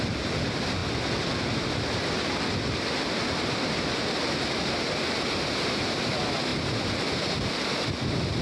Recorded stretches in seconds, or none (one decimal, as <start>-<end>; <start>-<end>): 0.0-8.4